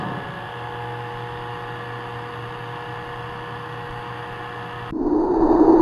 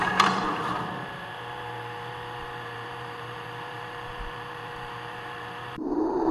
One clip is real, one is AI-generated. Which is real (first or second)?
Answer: first